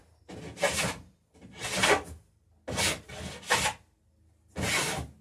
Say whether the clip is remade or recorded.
recorded